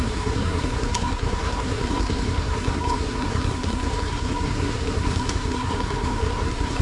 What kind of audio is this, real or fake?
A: fake